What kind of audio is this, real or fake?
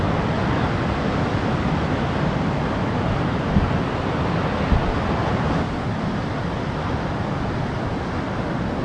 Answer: real